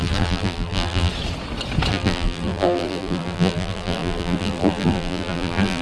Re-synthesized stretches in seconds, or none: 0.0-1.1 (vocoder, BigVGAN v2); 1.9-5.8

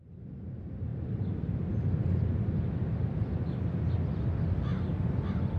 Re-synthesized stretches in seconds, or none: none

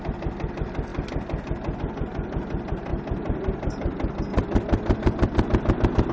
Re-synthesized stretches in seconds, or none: 0.9-1.8 (vocoder, BigVGAN v2); 2.9-4.2